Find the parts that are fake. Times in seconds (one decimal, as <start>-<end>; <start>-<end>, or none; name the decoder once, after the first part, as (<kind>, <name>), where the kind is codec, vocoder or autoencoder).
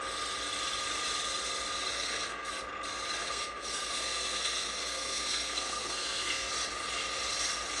1.9-2.5 (codec, SNAC); 3.2-6.5